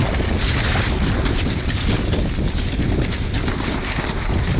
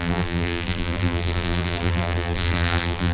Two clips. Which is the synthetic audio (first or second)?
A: second